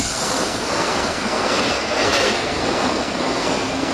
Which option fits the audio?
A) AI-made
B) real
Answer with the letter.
A